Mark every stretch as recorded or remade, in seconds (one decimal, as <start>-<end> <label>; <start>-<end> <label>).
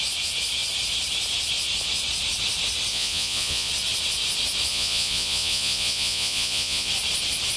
0.0-2.9 recorded; 2.9-3.7 remade; 3.7-4.7 recorded; 4.7-6.9 remade; 6.9-7.6 recorded